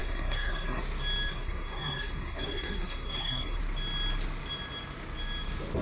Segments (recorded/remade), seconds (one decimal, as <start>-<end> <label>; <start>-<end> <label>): 0.0-0.8 remade; 0.8-1.3 recorded; 1.3-3.6 remade; 3.6-5.8 recorded